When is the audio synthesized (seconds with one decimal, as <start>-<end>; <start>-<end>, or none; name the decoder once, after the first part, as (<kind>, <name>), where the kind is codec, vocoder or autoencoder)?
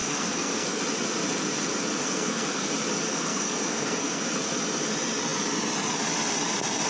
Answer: 0.0-0.8 (codec, SNAC); 2.0-2.7; 3.1-4.2